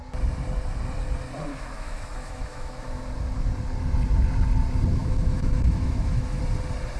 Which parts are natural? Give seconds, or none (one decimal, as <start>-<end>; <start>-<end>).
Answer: 0.0-1.5; 3.0-5.0; 6.4-7.0